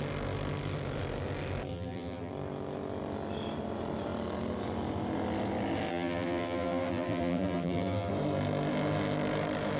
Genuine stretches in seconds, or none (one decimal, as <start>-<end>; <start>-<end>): 0.0-1.7; 2.3-5.9; 8.1-9.8